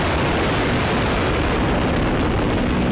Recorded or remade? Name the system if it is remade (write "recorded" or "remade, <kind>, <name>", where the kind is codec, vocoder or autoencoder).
recorded